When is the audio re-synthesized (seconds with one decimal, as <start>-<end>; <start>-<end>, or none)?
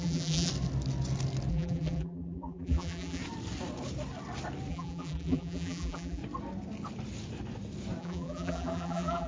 0.0-0.5; 1.5-3.2; 4.7-6.2; 8.0-9.3